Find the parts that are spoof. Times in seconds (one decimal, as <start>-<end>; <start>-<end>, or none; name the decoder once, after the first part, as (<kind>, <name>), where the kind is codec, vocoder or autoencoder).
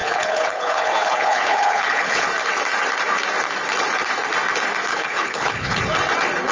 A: 0.0-2.3 (codec, HILCodec); 4.9-5.8